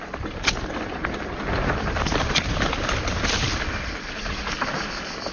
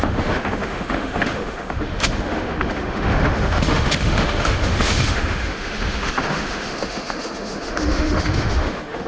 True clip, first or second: first